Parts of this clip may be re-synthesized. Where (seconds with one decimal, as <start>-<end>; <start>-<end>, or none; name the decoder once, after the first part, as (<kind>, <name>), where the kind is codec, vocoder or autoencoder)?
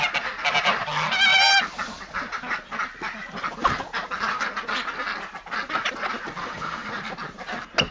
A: 6.4-6.9 (autoencoder, DAC-VAE)